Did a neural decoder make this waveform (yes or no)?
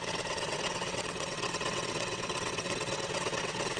yes